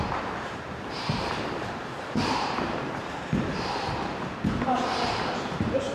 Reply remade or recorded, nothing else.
remade